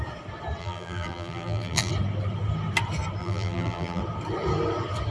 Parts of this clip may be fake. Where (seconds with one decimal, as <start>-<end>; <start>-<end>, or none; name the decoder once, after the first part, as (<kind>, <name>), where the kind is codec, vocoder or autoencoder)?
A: 0.6-1.9 (vocoder, BigVGAN v2); 3.2-4.0